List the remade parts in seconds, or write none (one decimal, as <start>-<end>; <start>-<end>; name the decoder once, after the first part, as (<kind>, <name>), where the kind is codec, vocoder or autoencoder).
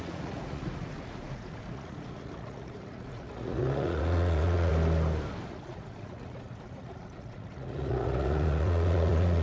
0.0-4.7 (vocoder, Vocos); 5.5-9.4